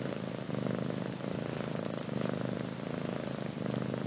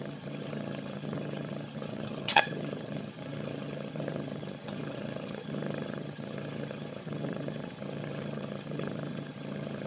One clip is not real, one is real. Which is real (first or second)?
first